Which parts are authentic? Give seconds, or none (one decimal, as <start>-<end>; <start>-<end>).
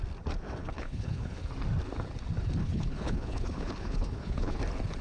0.0-0.6; 1.5-2.6; 4.6-5.0